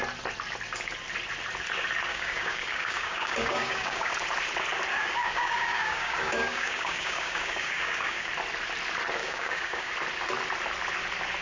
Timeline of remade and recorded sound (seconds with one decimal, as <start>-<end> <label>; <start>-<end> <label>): 0.0-2.1 recorded; 2.1-4.1 remade; 4.1-4.9 recorded; 4.9-8.3 remade; 8.3-9.2 recorded; 9.2-9.9 remade; 9.9-11.4 recorded